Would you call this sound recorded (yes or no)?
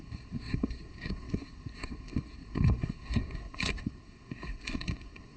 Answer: no